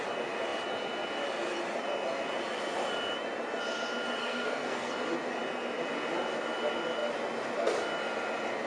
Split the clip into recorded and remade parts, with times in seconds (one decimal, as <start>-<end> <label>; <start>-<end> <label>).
0.0-4.2 recorded; 4.2-4.9 remade; 4.9-8.7 recorded